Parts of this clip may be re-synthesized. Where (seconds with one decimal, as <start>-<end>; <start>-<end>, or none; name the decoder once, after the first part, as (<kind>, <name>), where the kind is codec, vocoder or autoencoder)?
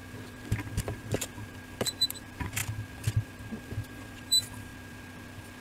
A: 0.8-2.6 (vocoder, BigVGAN v2); 3.9-4.7